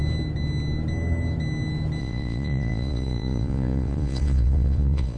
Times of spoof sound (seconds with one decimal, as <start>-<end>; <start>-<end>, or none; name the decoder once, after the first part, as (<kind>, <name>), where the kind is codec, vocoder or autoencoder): 2.0-5.2 (vocoder, Vocos)